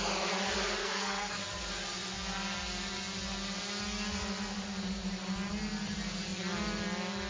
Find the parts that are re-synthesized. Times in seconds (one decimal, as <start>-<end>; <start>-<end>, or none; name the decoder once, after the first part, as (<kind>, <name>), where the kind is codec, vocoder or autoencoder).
0.8-1.4 (codec, SNAC)